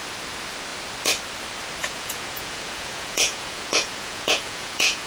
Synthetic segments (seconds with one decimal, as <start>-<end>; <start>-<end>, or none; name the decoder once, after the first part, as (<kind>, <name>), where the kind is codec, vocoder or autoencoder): 1.8-5.1 (vocoder, Vocos)